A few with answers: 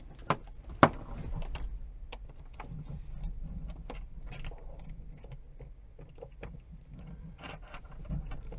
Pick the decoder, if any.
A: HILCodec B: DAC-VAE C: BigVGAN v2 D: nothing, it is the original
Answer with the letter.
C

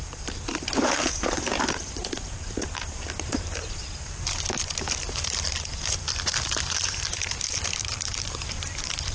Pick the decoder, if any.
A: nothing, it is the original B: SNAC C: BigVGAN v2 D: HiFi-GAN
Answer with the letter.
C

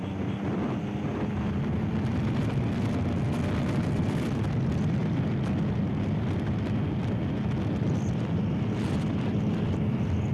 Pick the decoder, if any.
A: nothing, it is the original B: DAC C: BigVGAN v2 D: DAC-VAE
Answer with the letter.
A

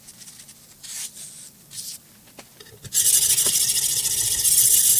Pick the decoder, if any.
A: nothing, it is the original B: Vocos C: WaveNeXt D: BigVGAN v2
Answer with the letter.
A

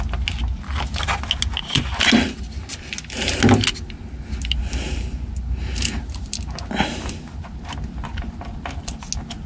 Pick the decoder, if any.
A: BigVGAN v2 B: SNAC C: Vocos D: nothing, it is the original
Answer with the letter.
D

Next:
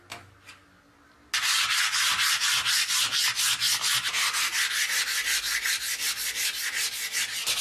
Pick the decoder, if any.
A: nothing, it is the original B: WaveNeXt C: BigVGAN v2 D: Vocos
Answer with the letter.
A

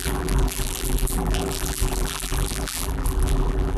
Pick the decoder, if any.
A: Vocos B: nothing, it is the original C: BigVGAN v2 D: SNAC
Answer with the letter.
C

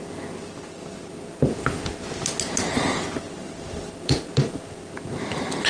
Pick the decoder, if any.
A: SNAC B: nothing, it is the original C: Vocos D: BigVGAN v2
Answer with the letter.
B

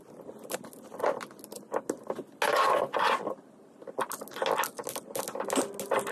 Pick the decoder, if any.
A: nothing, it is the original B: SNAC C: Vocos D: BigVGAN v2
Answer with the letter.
A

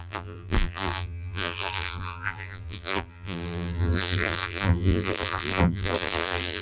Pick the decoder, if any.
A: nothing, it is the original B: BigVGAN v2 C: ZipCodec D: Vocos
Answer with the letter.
B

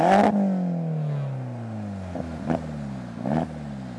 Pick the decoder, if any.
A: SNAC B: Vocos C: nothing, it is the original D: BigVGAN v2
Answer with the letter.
C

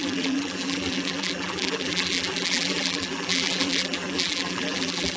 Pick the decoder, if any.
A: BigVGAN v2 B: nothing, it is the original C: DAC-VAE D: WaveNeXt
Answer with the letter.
A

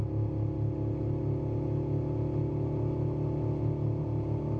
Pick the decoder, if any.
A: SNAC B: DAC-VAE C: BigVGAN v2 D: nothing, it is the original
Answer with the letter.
D